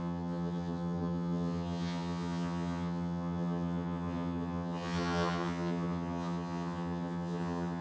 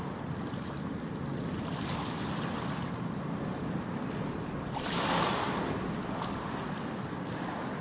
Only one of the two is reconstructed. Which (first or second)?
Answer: first